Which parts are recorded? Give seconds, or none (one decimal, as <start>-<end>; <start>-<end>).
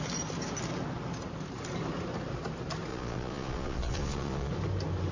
0.0-2.9; 4.5-5.1